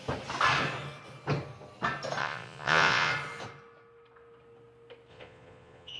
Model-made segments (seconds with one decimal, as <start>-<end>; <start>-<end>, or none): 2.2-3.1; 5.1-6.0